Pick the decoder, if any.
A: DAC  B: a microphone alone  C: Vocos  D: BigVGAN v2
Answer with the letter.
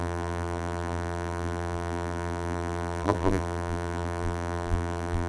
D